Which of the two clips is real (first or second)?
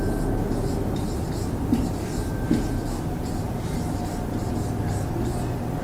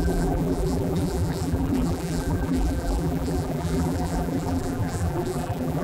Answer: first